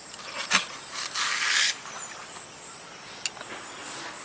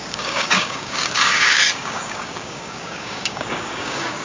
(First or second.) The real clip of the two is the first